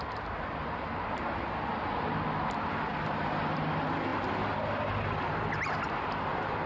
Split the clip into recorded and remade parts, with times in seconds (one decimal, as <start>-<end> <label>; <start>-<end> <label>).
0.0-6.7 recorded